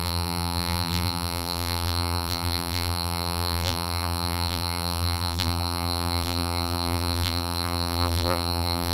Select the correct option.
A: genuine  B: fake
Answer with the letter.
B